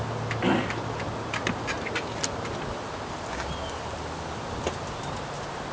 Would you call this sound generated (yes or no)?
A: no